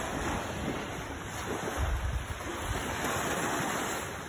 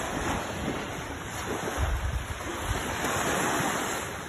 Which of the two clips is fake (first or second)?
second